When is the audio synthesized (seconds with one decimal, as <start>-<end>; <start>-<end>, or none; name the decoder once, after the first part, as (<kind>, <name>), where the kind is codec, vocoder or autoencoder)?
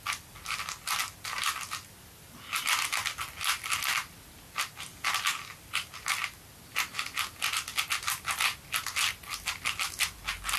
none